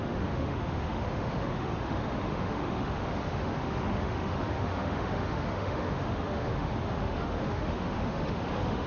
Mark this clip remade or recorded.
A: remade